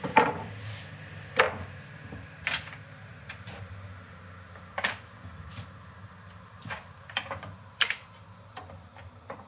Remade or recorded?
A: recorded